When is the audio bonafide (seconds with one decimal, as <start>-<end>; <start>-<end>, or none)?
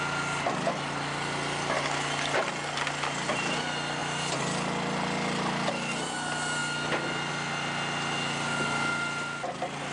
0.0-9.9